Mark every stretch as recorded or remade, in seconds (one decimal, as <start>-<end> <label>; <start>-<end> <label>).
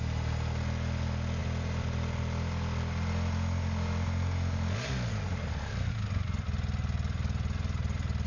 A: 0.0-8.3 recorded